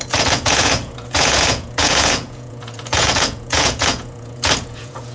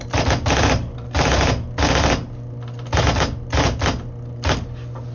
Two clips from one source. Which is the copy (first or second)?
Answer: first